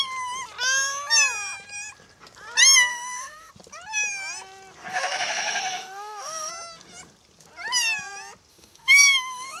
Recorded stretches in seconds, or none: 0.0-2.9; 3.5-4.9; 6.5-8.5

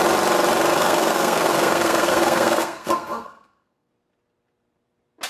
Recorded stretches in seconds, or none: 0.0-0.7; 3.9-5.3

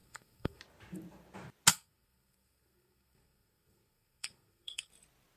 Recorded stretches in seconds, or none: 0.6-1.7; 4.9-5.4

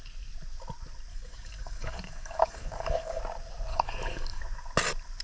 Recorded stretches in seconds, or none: 0.0-1.1; 3.2-3.7; 4.4-5.2

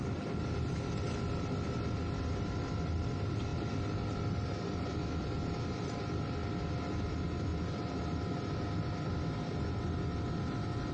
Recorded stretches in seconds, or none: 0.0-10.9

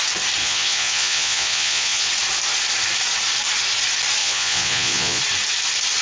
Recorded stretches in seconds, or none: 0.0-0.4; 2.1-4.2; 5.2-6.0

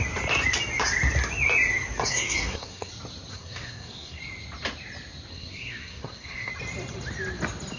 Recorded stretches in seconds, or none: 0.0-2.1; 2.9-3.3; 4.2-5.3; 6.5-7.8